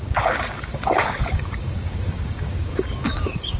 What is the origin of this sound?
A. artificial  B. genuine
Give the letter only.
A